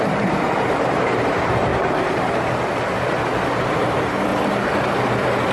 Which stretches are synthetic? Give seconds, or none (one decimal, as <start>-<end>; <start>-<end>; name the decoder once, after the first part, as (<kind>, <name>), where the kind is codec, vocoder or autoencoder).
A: 0.0-1.7 (vocoder, BigVGAN v2); 3.8-4.3